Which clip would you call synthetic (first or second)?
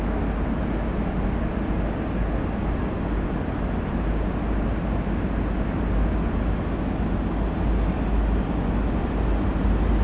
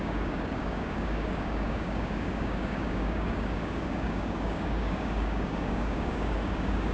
second